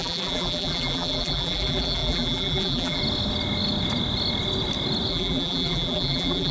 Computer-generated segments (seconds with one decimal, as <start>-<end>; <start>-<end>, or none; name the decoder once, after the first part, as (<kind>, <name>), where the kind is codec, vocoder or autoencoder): 0.0-3.0 (vocoder, BigVGAN v2); 5.1-6.5